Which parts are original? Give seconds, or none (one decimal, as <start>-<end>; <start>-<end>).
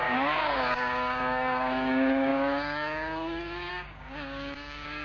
none